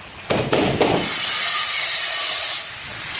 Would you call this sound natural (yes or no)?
yes